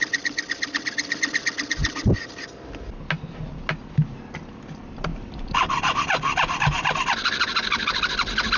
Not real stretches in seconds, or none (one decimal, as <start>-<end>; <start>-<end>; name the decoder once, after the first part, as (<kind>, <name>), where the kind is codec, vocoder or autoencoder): 1.8-2.3 (vocoder, BigVGAN v2); 5.1-5.7